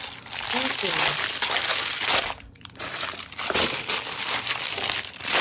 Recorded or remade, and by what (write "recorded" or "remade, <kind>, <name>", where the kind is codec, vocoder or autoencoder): remade, vocoder, BigVGAN v2